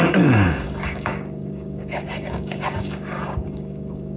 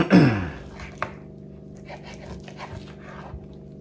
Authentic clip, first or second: second